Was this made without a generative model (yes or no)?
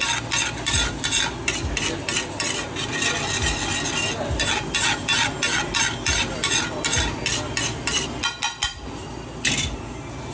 yes